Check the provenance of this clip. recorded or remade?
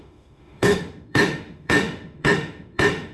remade